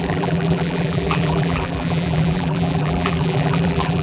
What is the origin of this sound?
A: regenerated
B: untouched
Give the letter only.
A